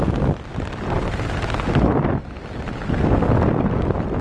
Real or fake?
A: real